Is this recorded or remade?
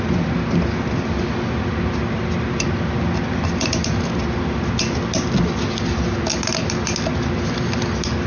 recorded